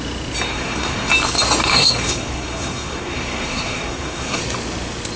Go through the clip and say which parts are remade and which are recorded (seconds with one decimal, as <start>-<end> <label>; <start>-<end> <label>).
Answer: 0.0-0.5 recorded; 0.5-1.1 remade; 1.1-1.7 recorded; 1.7-4.4 remade; 4.4-5.2 recorded